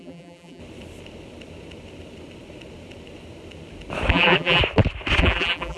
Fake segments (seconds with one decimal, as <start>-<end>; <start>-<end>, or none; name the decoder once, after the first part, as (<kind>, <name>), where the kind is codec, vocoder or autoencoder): 0.0-0.6 (vocoder, BigVGAN v2); 4.1-4.6; 5.2-5.8